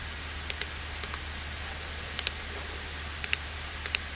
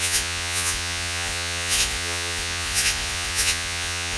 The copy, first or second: second